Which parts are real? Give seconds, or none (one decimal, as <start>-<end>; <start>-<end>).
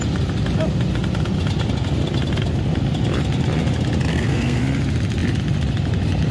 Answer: 0.0-4.1; 4.6-6.3